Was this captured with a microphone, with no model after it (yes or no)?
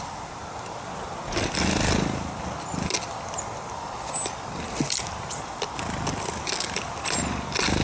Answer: yes